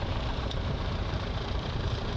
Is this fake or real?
fake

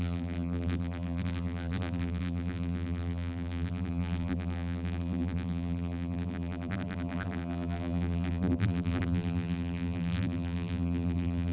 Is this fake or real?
fake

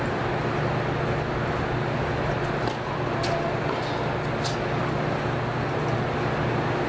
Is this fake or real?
real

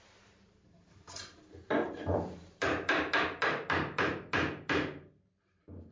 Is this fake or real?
fake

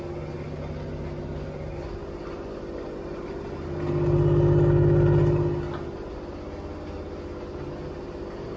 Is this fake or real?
real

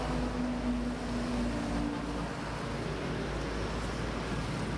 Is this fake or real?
real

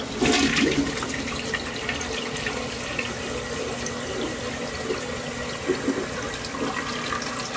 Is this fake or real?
real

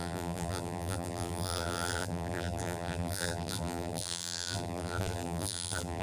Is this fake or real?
fake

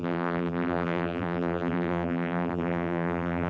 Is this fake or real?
fake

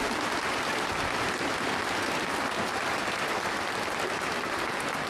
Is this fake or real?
fake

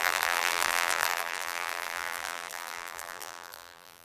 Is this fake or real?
fake